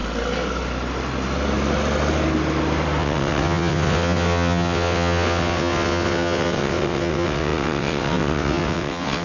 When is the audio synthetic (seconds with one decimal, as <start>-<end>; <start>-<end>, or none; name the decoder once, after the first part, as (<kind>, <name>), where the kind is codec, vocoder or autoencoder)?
3.0-9.2 (vocoder, WaveNeXt)